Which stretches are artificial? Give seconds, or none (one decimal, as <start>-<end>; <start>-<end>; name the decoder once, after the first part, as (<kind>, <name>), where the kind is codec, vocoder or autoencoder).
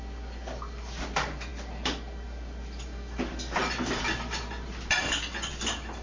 none